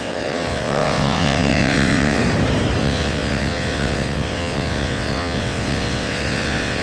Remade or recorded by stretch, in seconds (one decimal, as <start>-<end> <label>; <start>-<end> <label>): 0.0-2.2 remade; 2.2-2.8 recorded; 2.8-6.8 remade

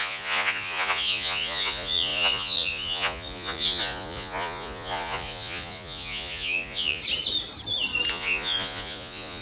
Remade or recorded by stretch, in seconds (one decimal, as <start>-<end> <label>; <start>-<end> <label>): 0.0-7.0 remade; 7.0-8.1 recorded; 8.1-9.4 remade

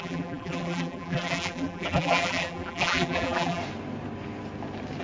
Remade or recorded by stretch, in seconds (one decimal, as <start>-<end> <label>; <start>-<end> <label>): 0.0-3.6 remade; 3.6-5.0 recorded

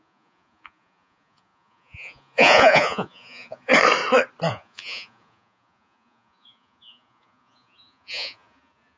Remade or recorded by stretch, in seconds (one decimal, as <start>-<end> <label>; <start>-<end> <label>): 0.0-3.7 remade; 3.7-4.5 recorded; 4.5-9.0 remade

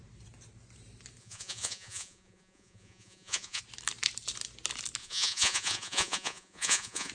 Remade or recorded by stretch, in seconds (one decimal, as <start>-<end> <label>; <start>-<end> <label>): 0.0-1.2 recorded; 1.2-3.6 remade; 3.6-5.0 recorded; 5.0-7.1 remade

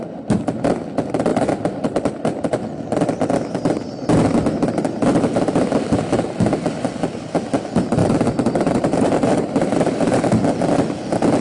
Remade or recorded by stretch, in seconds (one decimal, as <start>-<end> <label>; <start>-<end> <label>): 0.0-8.0 recorded; 8.0-10.2 remade; 10.2-11.4 recorded

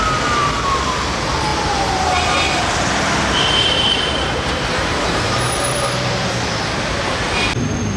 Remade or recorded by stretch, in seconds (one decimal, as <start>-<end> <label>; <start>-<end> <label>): 0.0-1.5 recorded; 1.5-6.3 remade; 6.3-8.0 recorded